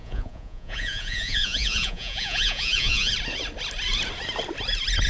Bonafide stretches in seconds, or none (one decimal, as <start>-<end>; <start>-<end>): 3.1-5.1